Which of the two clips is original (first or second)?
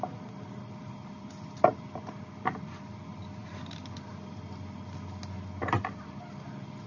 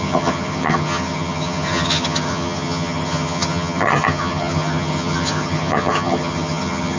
first